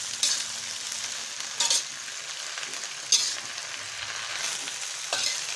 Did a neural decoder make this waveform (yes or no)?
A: no